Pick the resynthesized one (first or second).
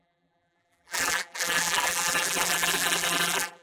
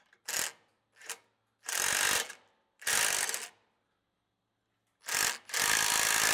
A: first